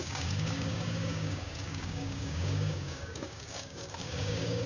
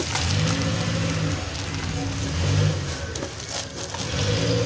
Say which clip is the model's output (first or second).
first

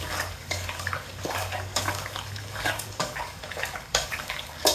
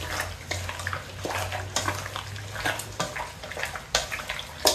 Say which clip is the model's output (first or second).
first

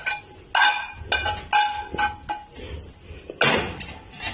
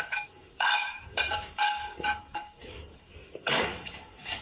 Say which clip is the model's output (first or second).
second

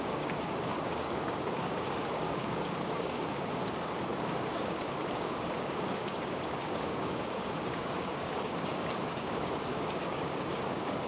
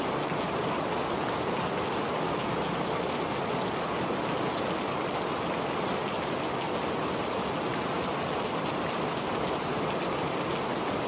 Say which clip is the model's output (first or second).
first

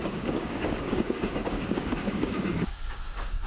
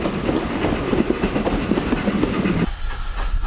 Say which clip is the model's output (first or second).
first